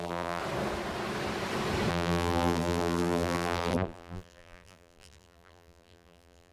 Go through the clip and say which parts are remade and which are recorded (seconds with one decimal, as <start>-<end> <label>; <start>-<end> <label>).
0.0-0.4 remade; 0.4-1.9 recorded; 1.9-6.5 remade